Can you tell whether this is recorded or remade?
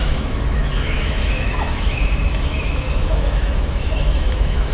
remade